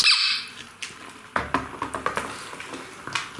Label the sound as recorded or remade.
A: recorded